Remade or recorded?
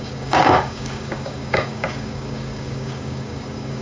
remade